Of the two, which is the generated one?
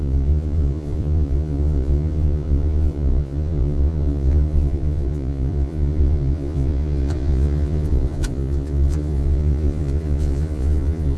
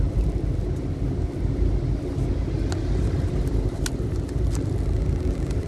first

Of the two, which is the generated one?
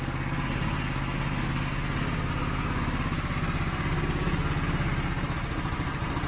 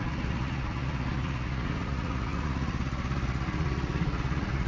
second